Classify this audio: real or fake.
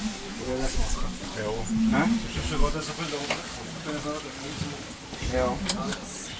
real